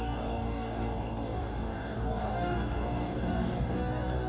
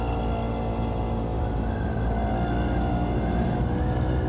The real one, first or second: second